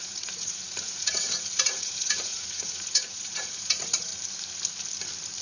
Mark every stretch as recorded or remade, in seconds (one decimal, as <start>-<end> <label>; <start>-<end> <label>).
0.0-4.1 remade; 4.1-5.4 recorded